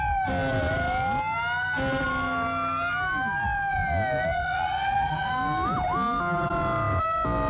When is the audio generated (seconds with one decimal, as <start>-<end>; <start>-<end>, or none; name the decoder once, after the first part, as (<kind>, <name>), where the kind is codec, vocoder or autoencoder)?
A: 4.4-5.3 (vocoder, Vocos)

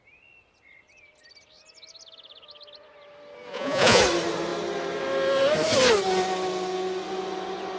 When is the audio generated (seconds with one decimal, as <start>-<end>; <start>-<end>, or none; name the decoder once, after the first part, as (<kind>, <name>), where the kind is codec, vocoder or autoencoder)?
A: 3.5-4.0 (vocoder, Vocos)

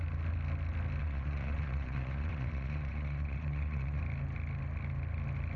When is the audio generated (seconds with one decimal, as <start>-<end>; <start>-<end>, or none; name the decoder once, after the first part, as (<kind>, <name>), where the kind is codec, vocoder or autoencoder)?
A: 1.0-4.0 (vocoder, Vocos)

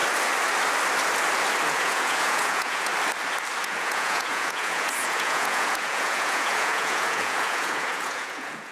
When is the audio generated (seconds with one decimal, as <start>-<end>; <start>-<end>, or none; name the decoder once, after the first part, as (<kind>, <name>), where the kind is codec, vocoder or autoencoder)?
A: 1.7-2.9 (vocoder, Vocos); 3.6-8.7

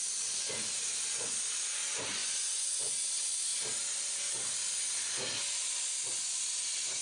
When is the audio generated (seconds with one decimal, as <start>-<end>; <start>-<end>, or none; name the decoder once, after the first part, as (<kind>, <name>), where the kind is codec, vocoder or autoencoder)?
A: 2.2-3.1 (vocoder, Vocos)